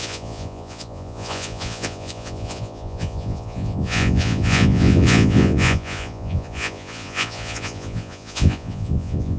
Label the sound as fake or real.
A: fake